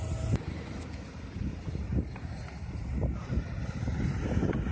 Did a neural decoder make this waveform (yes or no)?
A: no